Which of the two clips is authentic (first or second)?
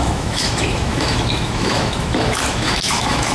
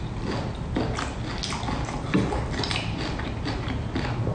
second